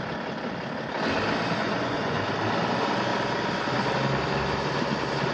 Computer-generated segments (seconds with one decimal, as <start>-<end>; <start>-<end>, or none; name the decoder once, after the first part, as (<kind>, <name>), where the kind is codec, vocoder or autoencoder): 1.6-2.2 (vocoder, Vocos)